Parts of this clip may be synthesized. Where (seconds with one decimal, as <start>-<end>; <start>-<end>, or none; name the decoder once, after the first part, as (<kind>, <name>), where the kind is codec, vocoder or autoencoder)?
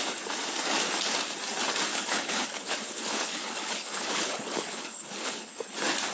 1.9-5.5 (codec, HILCodec)